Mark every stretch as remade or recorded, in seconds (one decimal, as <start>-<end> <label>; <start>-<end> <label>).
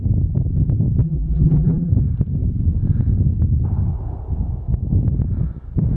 0.0-1.0 recorded; 1.0-1.9 remade; 1.9-6.0 recorded